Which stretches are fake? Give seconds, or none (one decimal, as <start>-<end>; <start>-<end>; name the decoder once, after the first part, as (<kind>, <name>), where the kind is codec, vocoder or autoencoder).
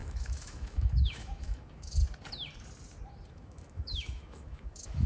0.0-2.0 (autoencoder, DAC-VAE); 3.3-5.1